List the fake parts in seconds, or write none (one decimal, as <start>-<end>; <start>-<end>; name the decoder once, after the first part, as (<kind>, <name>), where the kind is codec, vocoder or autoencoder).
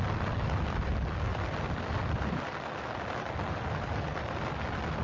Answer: 1.3-4.2 (vocoder, BigVGAN v2)